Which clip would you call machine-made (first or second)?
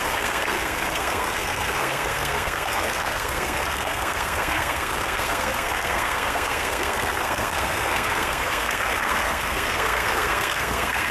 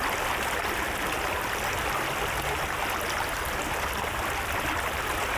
first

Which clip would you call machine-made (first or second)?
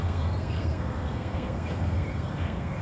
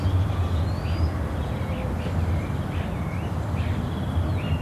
first